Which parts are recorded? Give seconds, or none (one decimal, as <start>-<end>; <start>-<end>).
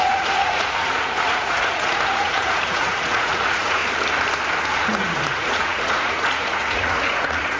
3.8-4.8